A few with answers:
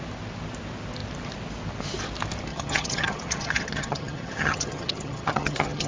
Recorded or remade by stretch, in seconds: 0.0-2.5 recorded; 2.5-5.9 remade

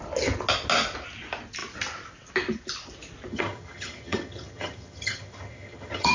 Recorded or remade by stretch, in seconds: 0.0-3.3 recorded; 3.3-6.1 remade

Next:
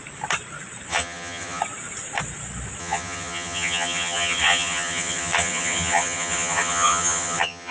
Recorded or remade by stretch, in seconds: 0.0-0.9 recorded; 0.9-1.6 remade; 1.6-2.8 recorded; 2.8-7.7 remade